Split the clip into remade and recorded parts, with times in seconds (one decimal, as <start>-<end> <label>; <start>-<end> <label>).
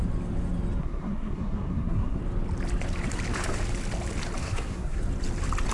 0.0-0.8 recorded; 0.8-2.2 remade; 2.2-4.4 recorded; 4.4-5.0 remade; 5.0-5.7 recorded